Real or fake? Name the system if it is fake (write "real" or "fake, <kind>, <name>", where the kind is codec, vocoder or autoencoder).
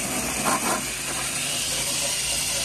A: fake, vocoder, BigVGAN v2